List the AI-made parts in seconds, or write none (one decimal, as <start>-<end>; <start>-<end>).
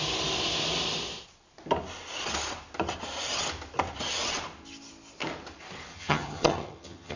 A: 5.9-7.2